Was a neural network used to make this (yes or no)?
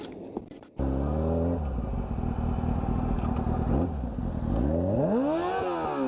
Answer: no